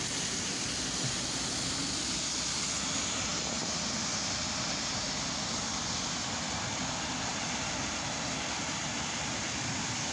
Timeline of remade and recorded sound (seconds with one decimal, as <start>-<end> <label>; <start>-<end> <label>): 0.0-10.1 recorded